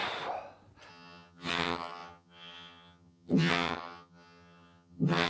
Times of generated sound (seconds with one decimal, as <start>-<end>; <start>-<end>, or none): 0.9-5.3